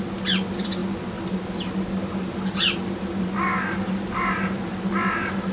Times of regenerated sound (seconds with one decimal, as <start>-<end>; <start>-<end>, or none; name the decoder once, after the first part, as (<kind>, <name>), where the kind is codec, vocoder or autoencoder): none